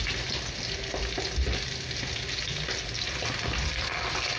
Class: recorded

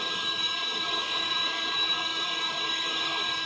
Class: remade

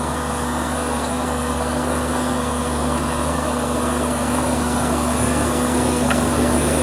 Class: remade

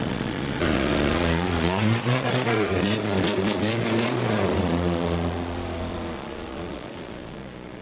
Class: remade